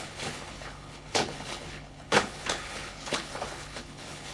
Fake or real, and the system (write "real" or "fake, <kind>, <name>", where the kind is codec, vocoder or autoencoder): fake, codec, HILCodec